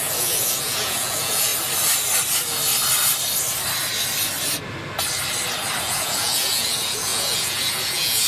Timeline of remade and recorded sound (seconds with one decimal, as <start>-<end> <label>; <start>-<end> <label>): 0.0-1.5 remade; 1.5-5.8 recorded; 5.8-8.3 remade